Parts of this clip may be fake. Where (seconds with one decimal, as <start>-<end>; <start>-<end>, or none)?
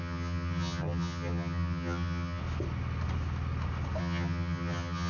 0.0-2.4; 4.0-5.1